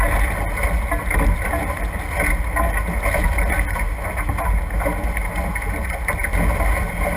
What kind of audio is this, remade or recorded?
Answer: recorded